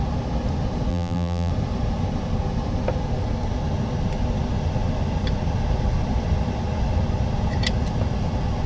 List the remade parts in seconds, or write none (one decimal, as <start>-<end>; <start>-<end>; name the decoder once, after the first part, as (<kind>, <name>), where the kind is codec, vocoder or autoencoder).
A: 0.9-1.5 (vocoder, BigVGAN v2)